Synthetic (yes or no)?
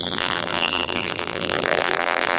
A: yes